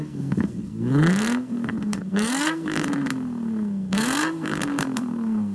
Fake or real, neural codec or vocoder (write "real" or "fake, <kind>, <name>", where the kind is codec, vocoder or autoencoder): fake, codec, SNAC